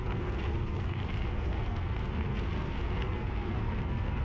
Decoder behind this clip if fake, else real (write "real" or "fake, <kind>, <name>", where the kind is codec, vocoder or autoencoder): fake, codec, SNAC